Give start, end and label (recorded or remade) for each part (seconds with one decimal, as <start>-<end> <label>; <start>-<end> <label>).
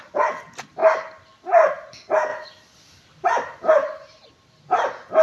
0.0-0.8 recorded; 0.8-1.7 remade; 1.7-2.3 recorded; 2.3-3.7 remade; 3.7-5.2 recorded